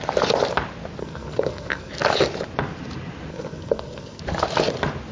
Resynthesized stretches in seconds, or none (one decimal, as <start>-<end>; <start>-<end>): 1.0-1.9; 3.3-4.2